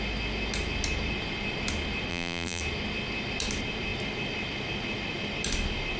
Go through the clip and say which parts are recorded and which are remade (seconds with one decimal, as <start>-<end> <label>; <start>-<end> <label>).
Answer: 0.0-2.1 recorded; 2.1-2.6 remade; 2.6-6.0 recorded